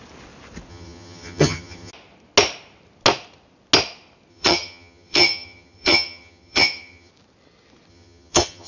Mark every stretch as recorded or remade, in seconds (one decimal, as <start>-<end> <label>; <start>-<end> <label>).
0.0-0.7 recorded; 0.7-1.9 remade; 1.9-4.3 recorded; 4.3-7.1 remade; 7.1-7.9 recorded; 7.9-8.7 remade